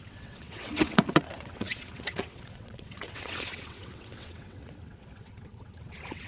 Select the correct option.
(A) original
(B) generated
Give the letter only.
B